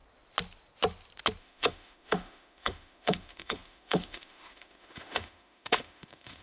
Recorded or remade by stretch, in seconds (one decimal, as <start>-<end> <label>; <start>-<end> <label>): 0.0-1.4 recorded; 1.4-6.4 remade

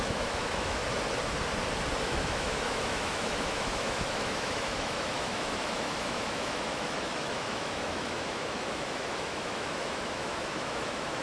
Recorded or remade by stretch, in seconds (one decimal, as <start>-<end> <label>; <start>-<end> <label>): 0.0-0.8 remade; 0.8-2.0 recorded; 2.0-11.2 remade